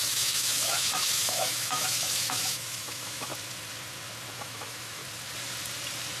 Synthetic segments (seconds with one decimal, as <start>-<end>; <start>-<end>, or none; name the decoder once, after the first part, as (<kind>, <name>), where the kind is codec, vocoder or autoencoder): 0.0-3.3 (autoencoder, DAC-VAE); 4.4-5.0